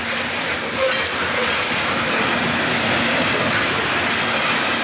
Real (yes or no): yes